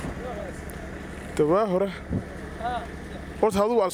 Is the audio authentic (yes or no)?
yes